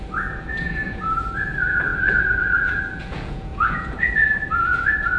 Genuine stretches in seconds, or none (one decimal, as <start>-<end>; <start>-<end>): none